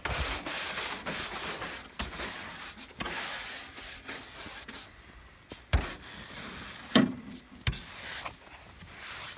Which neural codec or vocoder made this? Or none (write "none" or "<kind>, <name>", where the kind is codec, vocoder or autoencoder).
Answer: none